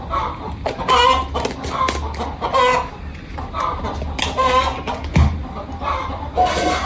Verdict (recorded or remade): recorded